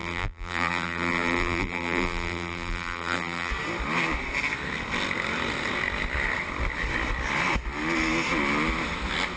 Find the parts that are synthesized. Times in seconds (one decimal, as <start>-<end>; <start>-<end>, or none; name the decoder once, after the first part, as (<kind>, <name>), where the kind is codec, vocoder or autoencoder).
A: 0.0-3.5 (vocoder, BigVGAN v2)